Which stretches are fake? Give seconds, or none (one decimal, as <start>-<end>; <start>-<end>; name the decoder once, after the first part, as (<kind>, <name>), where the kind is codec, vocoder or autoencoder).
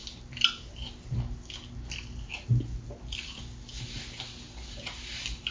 none